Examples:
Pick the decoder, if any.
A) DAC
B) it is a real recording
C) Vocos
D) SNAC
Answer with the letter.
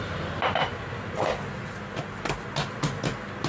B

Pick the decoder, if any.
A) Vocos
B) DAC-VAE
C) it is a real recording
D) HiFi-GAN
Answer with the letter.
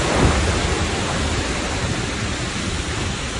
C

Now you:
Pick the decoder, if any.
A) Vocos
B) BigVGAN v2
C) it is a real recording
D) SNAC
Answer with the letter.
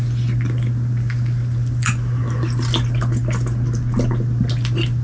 C